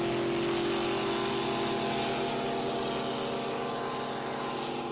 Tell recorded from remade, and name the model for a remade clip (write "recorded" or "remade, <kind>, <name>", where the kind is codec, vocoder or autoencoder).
recorded